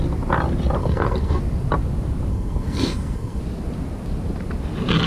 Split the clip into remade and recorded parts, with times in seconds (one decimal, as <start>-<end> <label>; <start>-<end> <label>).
0.0-0.8 recorded; 0.8-1.4 remade; 1.4-2.3 recorded; 2.3-3.4 remade; 3.4-5.1 recorded